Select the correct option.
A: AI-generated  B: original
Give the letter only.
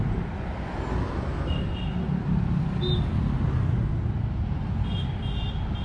B